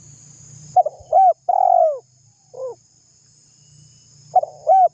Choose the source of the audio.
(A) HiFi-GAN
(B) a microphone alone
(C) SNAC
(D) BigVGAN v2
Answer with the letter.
B